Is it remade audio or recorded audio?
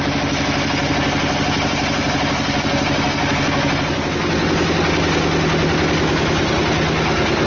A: recorded